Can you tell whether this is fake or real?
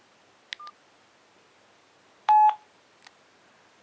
real